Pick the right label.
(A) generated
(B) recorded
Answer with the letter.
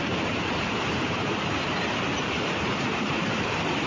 A